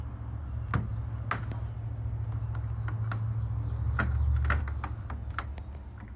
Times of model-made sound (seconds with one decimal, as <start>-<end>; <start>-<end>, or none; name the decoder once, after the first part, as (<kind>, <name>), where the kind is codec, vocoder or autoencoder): 5.5-6.2 (vocoder, BigVGAN v2)